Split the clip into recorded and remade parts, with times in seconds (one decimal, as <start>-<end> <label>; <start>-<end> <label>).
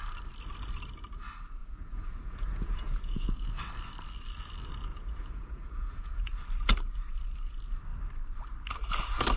0.0-1.6 recorded; 1.6-3.6 remade; 3.6-4.9 recorded; 4.9-6.3 remade; 6.3-9.4 recorded